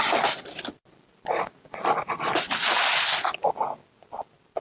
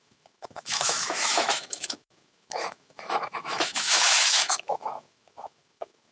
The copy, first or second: second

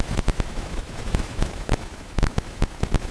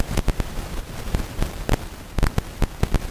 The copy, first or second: first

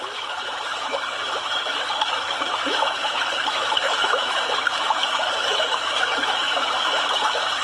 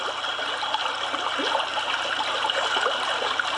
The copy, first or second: first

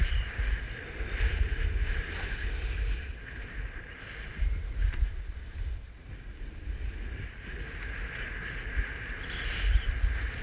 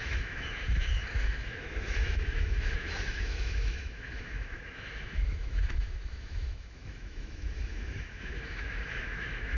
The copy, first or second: second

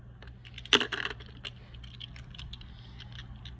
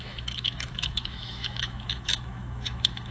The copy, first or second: second